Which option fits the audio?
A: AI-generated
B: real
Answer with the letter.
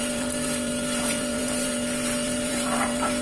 A